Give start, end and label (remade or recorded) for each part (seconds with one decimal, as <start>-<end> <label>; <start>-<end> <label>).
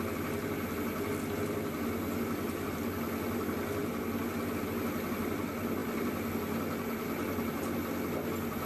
0.0-8.7 recorded